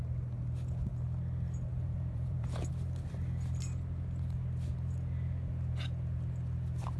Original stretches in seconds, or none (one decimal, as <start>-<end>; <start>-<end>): 0.0-1.7; 2.7-7.0